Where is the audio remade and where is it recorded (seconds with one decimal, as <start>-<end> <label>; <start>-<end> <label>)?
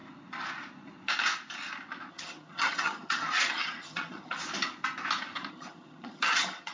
0.0-2.1 recorded; 2.1-4.4 remade; 4.4-5.5 recorded; 5.5-6.7 remade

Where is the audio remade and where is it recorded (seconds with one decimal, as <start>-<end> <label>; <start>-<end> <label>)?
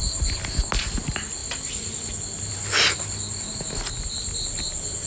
0.0-5.1 recorded